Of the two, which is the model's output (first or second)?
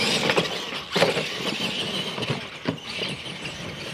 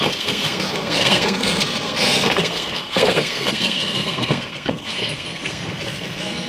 second